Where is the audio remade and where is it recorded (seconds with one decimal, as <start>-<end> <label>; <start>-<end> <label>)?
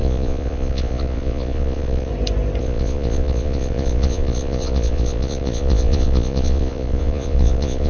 0.0-2.1 remade; 2.1-2.6 recorded; 2.6-7.9 remade